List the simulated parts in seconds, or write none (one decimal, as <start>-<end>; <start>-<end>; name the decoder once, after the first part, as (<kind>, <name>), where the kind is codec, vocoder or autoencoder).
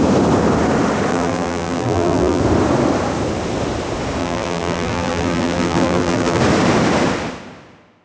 1.1-2.4 (vocoder, BigVGAN v2); 4.2-6.4